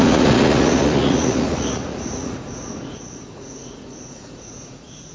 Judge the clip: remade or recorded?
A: remade